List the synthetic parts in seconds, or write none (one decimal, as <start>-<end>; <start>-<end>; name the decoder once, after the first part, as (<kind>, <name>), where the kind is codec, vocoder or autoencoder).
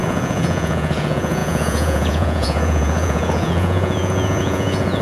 0.0-5.0 (vocoder, Vocos)